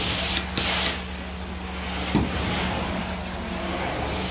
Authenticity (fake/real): real